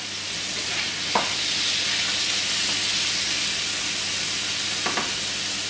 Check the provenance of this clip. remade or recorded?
recorded